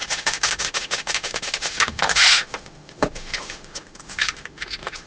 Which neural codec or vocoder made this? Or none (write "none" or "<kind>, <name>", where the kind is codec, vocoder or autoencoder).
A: autoencoder, DAC-VAE